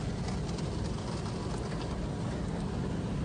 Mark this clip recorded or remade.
recorded